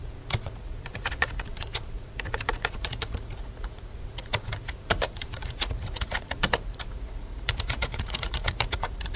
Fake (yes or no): yes